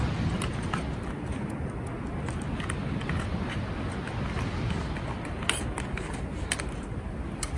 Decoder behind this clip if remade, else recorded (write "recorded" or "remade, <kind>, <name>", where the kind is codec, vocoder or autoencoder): recorded